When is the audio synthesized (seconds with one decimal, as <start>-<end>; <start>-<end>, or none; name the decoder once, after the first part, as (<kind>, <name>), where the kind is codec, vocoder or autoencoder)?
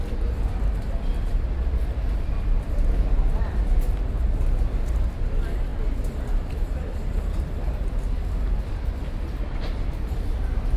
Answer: none